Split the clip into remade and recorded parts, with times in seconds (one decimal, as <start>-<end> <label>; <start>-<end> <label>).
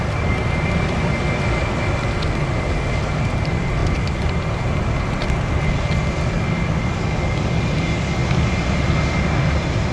0.0-9.9 recorded